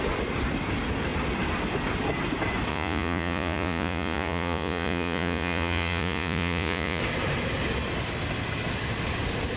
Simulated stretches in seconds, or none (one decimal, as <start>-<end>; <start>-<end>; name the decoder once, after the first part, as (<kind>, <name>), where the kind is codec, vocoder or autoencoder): 2.7-7.0 (vocoder, Vocos)